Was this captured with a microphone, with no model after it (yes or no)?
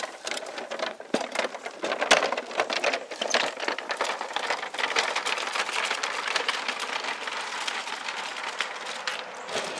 yes